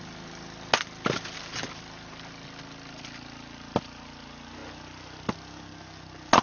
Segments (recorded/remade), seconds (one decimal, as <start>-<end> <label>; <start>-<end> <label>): 0.0-6.4 recorded